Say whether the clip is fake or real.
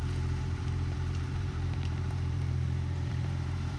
fake